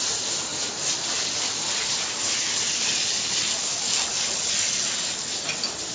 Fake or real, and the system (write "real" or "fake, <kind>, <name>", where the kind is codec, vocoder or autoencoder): real